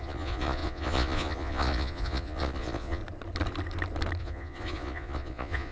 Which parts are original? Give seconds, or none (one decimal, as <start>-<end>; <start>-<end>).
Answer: 3.0-4.2